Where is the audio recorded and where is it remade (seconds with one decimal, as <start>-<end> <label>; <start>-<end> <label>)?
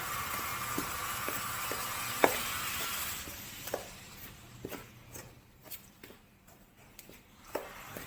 0.0-0.5 remade; 0.5-2.4 recorded; 2.4-8.1 remade